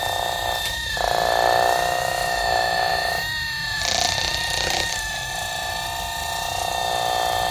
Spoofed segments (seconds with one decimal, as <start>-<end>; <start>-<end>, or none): none

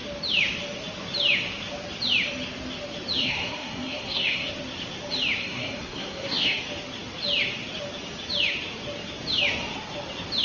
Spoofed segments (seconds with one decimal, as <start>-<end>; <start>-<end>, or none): 3.2-4.5; 5.4-6.6

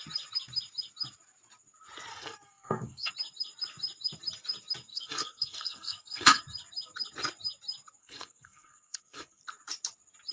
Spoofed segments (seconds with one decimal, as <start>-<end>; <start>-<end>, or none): 2.1-3.1; 4.9-6.4; 8.0-9.4

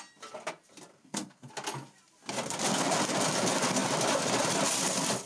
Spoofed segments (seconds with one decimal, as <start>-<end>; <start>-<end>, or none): 0.9-1.5

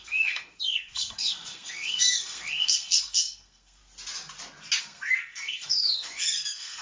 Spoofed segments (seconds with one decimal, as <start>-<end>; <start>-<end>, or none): 0.0-3.8; 4.8-6.8

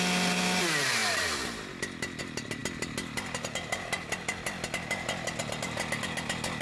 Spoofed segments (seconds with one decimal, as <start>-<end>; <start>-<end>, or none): none

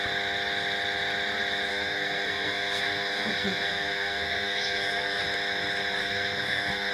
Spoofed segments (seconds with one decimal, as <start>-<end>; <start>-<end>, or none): 1.7-5.2; 6.0-6.9

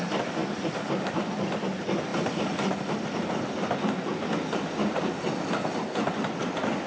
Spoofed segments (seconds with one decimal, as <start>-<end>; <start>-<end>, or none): none